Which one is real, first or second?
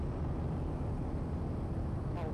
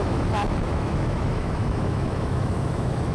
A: first